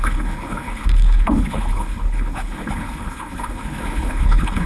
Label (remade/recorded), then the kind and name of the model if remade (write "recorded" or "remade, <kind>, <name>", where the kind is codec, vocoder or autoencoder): remade, codec, HILCodec